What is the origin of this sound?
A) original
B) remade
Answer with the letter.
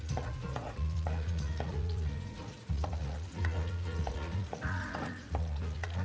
B